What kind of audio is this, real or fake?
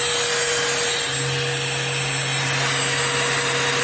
real